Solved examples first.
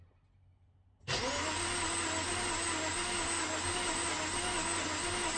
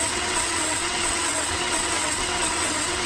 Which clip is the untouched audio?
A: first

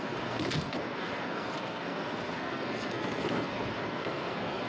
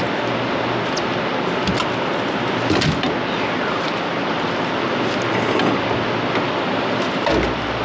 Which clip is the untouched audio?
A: second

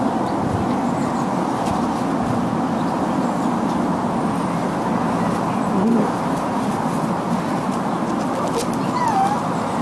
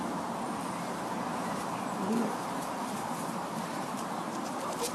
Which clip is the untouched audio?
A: first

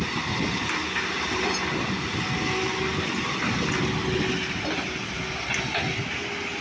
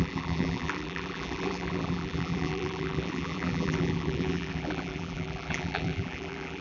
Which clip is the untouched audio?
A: first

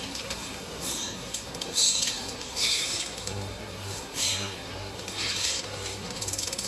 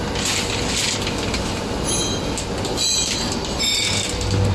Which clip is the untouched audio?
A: second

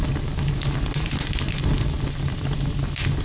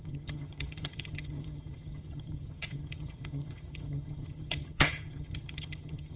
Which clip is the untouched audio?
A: first